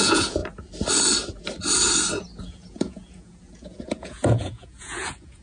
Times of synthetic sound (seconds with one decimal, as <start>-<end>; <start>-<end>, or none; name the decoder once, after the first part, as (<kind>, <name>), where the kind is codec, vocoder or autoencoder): 0.0-0.4 (vocoder, Vocos); 2.4-5.4